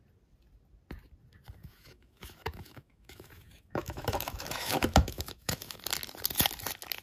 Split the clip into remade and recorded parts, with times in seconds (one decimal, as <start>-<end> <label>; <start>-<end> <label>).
0.0-1.6 recorded; 1.6-5.8 remade; 5.8-7.0 recorded

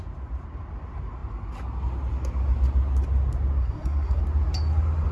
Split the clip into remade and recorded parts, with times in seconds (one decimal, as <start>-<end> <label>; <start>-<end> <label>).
0.0-3.6 recorded; 3.6-4.2 remade; 4.2-5.1 recorded